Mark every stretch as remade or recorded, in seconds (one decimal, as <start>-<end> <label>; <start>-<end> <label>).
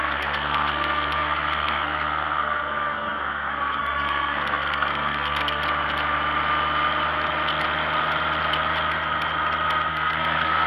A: 0.0-5.6 remade; 5.6-9.9 recorded; 9.9-10.7 remade